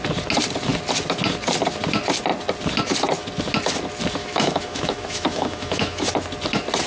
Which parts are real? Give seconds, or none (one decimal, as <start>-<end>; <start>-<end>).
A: 0.0-4.2; 6.1-6.9